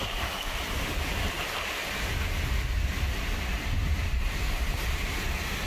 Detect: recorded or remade recorded